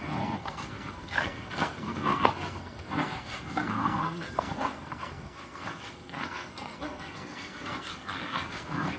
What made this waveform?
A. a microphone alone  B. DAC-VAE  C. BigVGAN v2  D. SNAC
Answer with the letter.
D